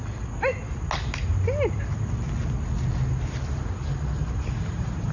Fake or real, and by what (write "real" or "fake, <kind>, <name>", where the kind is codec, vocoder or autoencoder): real